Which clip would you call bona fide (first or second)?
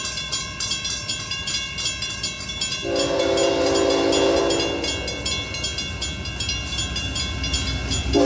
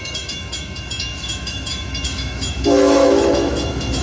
first